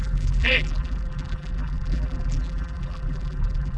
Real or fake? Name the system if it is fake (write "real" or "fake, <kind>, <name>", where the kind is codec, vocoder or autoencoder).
fake, vocoder, BigVGAN v2